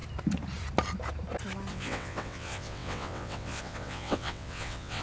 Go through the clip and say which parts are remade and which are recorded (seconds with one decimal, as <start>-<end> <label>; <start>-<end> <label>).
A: 0.0-1.7 recorded; 1.7-5.0 remade